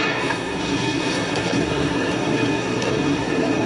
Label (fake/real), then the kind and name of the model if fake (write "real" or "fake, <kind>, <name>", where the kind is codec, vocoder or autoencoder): fake, codec, SNAC